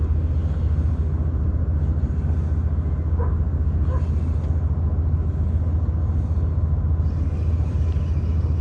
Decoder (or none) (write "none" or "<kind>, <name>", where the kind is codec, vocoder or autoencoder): none